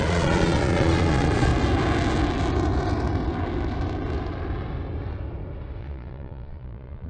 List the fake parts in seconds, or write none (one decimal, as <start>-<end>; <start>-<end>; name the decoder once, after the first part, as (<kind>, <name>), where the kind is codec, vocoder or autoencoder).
0.0-1.5 (vocoder, Vocos); 5.8-7.1